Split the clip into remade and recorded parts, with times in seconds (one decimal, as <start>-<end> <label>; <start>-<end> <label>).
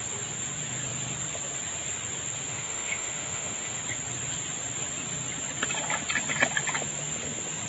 0.0-2.5 recorded; 2.5-3.8 remade; 3.8-7.7 recorded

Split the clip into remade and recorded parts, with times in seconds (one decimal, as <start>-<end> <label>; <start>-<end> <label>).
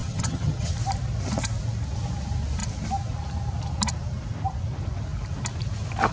0.0-0.7 remade; 0.7-6.1 recorded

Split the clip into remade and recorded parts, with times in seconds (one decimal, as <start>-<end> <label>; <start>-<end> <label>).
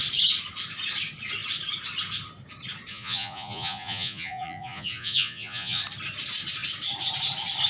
0.0-2.9 recorded; 2.9-5.8 remade; 5.8-7.7 recorded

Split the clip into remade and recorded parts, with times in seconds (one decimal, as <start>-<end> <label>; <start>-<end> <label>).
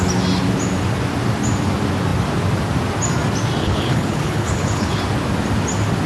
0.0-3.6 recorded; 3.6-5.0 remade; 5.0-6.1 recorded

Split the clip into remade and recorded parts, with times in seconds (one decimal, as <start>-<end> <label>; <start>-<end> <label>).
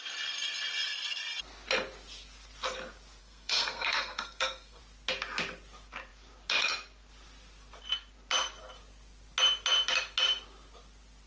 0.0-3.2 recorded; 3.2-4.8 remade; 4.8-11.3 recorded